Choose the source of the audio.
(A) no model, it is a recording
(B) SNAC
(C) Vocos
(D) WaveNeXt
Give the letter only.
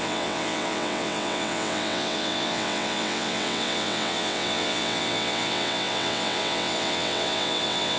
D